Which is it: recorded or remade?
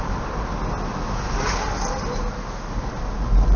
recorded